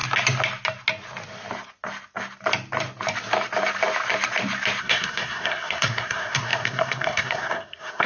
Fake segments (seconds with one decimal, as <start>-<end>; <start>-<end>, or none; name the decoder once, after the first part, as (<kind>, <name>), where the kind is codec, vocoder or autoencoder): 4.8-8.1 (codec, SNAC)